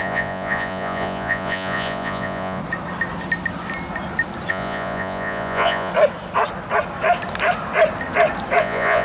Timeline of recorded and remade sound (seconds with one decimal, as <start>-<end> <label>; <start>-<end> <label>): 0.0-2.6 remade; 2.6-4.5 recorded; 4.5-5.9 remade; 5.9-8.6 recorded; 8.6-9.0 remade